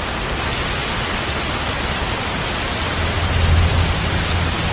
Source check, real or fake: real